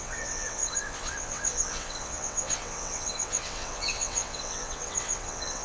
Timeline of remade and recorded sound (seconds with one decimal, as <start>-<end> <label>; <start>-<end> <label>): 0.0-5.6 remade